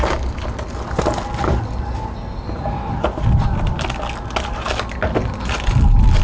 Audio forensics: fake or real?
real